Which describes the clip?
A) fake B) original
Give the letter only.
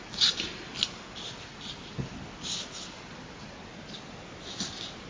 B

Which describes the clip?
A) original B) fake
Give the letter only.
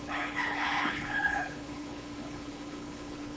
B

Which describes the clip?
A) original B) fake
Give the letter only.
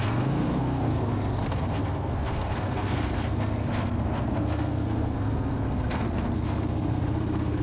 B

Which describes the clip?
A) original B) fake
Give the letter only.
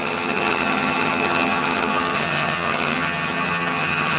B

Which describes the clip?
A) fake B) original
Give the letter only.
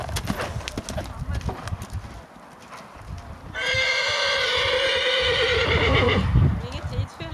B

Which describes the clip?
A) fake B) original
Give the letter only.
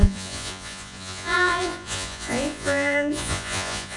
A